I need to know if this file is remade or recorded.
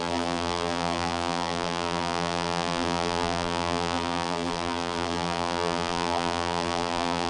remade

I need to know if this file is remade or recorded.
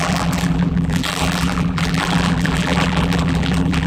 remade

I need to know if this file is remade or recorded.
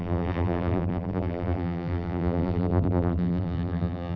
remade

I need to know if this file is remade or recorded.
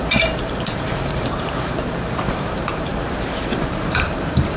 remade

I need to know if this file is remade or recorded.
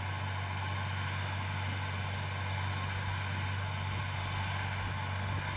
recorded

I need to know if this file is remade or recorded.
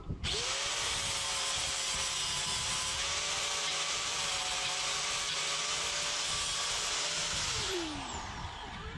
remade